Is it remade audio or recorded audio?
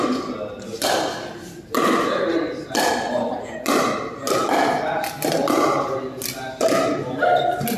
recorded